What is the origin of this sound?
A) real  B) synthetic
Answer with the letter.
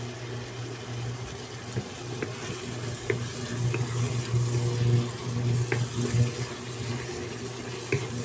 A